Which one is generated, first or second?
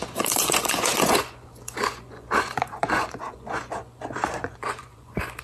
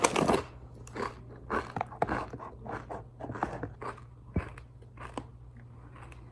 first